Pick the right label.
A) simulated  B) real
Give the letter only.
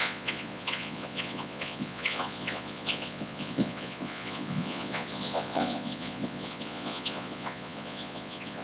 A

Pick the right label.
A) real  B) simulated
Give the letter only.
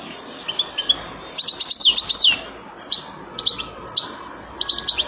A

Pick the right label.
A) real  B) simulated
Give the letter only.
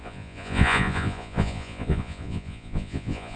B